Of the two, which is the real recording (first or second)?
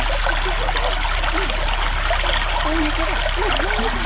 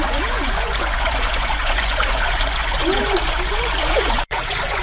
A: first